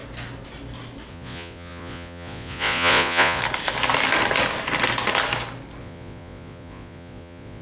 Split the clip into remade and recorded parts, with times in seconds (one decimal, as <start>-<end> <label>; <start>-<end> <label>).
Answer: 0.0-1.1 recorded; 1.1-3.4 remade; 3.4-5.8 recorded; 5.8-7.6 remade